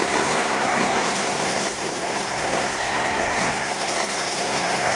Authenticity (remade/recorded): remade